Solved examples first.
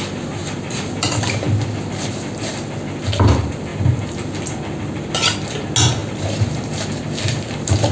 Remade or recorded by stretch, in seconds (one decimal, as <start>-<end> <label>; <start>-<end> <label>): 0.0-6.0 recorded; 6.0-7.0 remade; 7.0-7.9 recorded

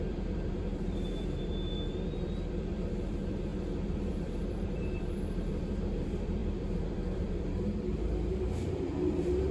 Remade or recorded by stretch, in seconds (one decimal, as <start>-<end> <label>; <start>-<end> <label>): 0.0-9.5 remade

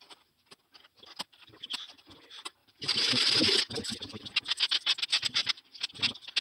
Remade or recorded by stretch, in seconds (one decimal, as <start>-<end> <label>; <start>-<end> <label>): 0.0-2.6 recorded; 2.6-3.3 remade; 3.3-6.4 recorded

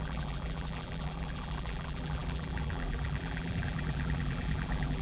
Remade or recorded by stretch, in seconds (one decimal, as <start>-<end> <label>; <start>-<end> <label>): 0.0-5.0 remade

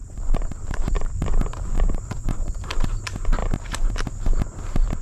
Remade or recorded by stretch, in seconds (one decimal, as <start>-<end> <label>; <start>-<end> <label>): 0.0-3.0 remade; 3.0-5.0 recorded

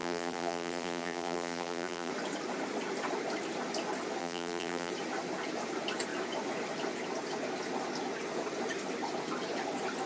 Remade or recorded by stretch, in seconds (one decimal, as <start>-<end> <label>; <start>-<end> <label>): 0.0-2.1 remade; 2.1-4.2 recorded; 4.2-4.9 remade; 4.9-10.1 recorded